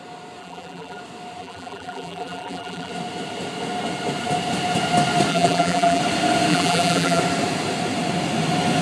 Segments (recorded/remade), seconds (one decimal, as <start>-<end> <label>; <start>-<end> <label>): 0.0-0.4 recorded; 0.4-1.0 remade; 1.0-1.4 recorded; 1.4-2.9 remade; 2.9-5.3 recorded; 5.3-6.0 remade; 6.0-6.5 recorded; 6.5-7.2 remade; 7.2-8.8 recorded